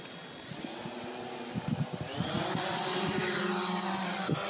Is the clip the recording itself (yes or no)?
yes